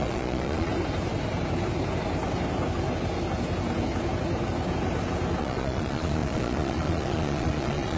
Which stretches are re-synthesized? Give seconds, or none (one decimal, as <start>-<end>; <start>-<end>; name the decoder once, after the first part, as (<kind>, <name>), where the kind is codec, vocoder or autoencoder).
0.0-0.7 (vocoder, Vocos); 5.4-8.0